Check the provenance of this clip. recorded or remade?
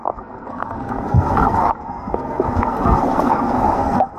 remade